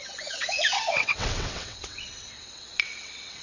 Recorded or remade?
remade